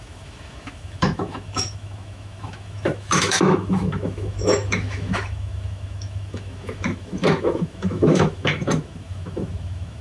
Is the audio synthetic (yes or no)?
yes